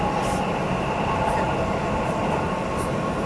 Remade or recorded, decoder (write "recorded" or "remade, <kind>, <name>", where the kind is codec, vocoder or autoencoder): recorded